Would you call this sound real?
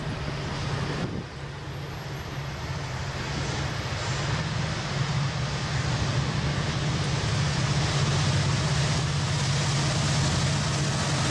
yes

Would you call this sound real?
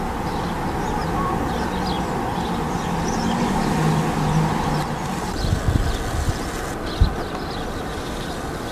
yes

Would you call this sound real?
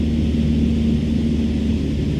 yes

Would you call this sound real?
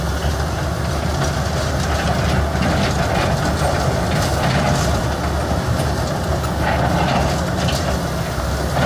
yes